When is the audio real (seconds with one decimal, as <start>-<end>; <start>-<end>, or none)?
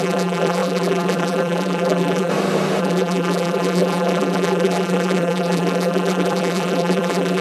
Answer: 2.3-2.8